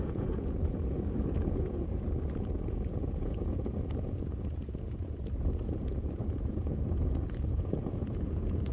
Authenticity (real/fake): fake